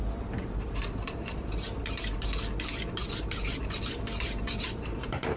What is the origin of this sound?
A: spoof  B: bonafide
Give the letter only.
A